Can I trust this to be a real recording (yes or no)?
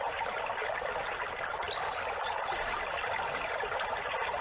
yes